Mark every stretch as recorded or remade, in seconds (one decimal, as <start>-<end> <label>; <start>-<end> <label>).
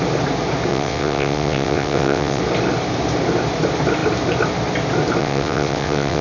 0.0-0.7 recorded; 0.7-2.4 remade; 2.4-5.2 recorded; 5.2-6.2 remade